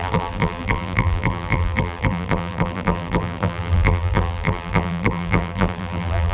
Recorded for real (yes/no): no